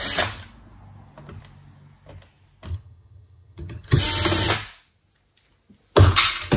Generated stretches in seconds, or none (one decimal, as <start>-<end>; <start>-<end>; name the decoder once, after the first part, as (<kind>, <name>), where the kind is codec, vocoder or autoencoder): 2.7-4.0 (vocoder, HiFi-GAN)